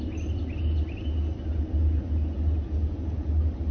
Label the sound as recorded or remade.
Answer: recorded